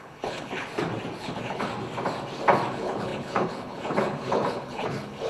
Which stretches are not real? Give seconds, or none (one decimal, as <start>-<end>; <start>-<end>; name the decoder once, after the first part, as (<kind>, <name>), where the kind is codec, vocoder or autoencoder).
0.0-0.7 (codec, HILCodec); 1.2-1.7; 2.7-5.3